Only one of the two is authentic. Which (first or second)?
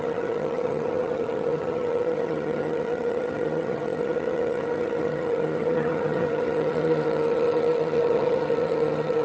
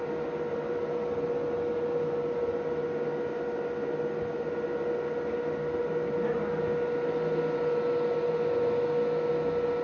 second